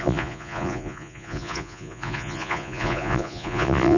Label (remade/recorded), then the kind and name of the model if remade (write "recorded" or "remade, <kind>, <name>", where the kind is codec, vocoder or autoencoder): remade, vocoder, Vocos